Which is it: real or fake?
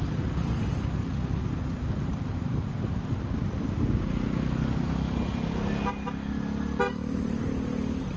real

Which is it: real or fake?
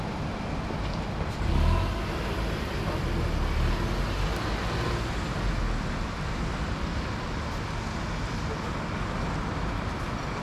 real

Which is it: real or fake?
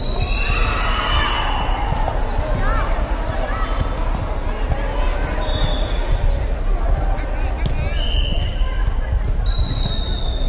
real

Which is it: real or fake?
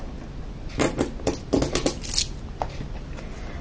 real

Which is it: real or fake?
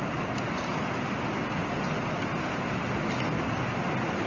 real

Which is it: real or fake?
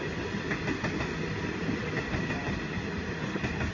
real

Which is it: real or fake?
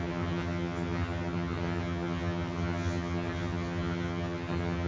fake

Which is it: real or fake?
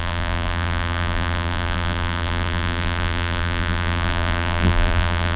fake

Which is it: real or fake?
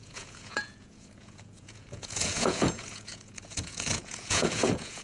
fake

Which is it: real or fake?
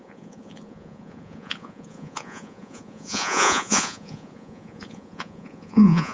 fake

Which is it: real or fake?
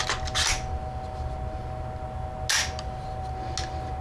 real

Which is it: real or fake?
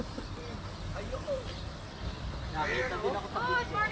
real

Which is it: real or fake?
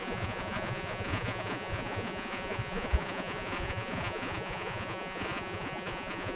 fake